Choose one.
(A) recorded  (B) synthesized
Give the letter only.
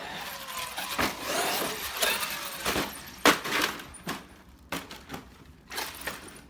B